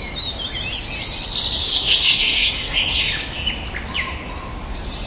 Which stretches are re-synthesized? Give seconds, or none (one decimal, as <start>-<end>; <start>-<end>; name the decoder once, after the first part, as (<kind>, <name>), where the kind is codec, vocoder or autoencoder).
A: 1.6-3.1 (codec, SNAC)